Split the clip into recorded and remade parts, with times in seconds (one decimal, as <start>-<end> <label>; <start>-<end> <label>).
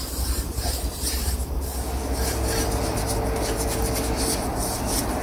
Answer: 0.0-1.7 remade; 1.7-4.6 recorded; 4.6-5.2 remade